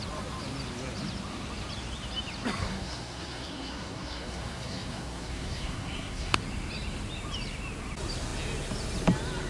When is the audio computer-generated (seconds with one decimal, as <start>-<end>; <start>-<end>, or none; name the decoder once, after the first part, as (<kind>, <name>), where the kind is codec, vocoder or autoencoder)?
2.6-6.4 (codec, SNAC)